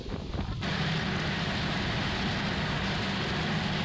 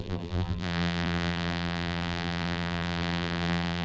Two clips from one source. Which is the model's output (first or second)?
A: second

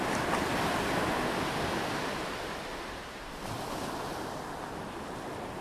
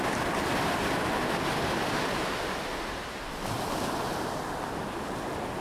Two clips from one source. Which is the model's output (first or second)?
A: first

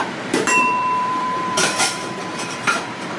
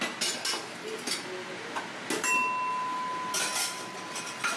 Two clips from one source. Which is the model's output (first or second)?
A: first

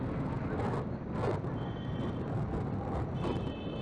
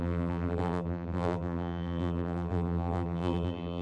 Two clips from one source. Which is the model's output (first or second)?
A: second